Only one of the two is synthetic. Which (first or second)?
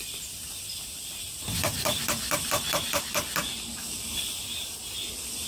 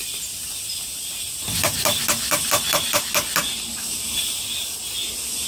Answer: first